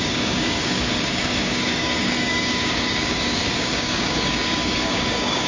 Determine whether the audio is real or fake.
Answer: fake